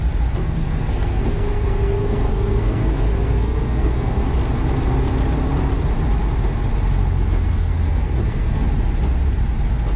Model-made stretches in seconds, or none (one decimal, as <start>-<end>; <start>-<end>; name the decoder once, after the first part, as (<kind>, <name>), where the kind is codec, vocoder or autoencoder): 0.4-4.3 (codec, SNAC); 7.0-8.6